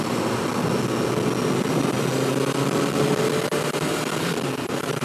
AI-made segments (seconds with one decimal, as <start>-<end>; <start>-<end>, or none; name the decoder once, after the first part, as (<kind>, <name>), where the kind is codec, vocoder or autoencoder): 0.0-0.5 (vocoder, BigVGAN v2); 1.5-2.1; 4.0-5.0